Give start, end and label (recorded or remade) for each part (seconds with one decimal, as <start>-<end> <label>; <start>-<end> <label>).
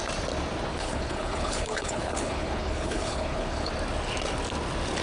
0.0-0.7 recorded; 0.7-3.7 remade; 3.7-5.0 recorded